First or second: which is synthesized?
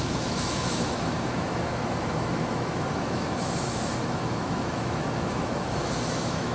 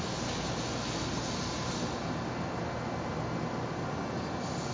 first